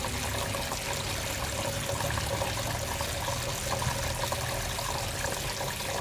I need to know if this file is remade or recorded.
recorded